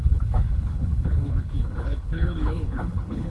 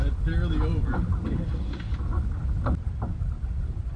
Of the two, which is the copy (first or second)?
first